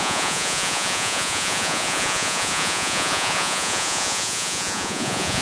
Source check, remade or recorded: remade